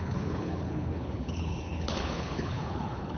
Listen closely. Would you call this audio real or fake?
fake